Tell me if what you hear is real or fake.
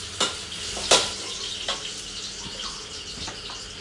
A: real